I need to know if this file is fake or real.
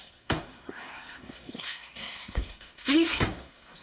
fake